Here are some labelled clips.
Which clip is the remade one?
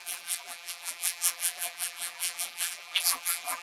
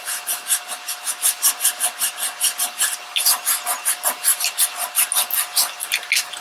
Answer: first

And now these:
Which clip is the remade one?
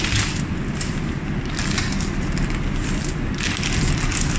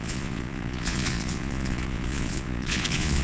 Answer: second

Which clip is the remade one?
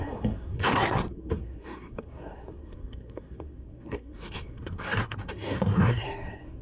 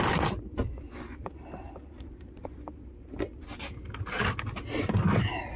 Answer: first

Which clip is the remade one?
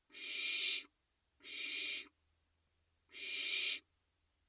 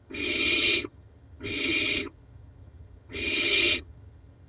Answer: second